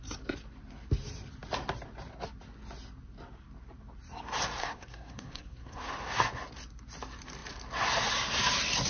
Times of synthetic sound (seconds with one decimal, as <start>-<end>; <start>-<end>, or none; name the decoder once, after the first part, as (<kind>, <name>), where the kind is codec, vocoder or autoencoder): 4.6-5.9 (codec, SNAC)